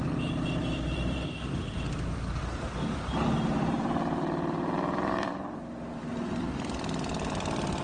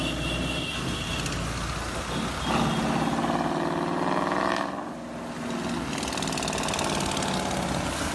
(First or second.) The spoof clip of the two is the first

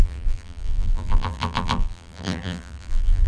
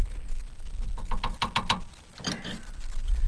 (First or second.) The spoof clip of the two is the first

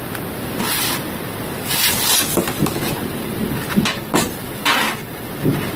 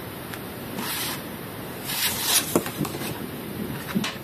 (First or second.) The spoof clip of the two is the second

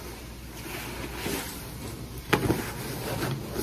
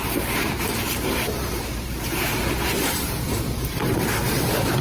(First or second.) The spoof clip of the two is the second